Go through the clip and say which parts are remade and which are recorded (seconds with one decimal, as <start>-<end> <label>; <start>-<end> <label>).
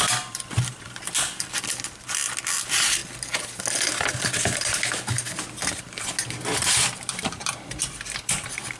0.0-3.0 remade; 3.0-7.2 recorded; 7.2-8.8 remade